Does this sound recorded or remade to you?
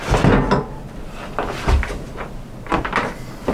recorded